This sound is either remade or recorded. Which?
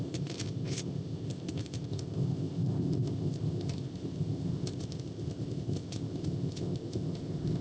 remade